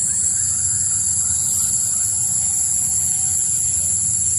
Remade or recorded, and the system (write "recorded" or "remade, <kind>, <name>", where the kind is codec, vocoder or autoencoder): recorded